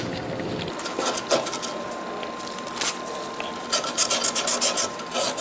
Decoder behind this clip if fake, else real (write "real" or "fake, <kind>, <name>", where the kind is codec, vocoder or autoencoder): real